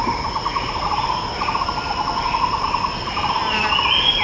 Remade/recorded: remade